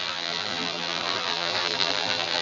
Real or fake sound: fake